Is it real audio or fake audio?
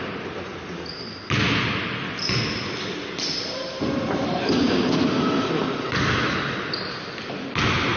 real